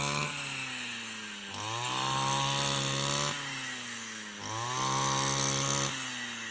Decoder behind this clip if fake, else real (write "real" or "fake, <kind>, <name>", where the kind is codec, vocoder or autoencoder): real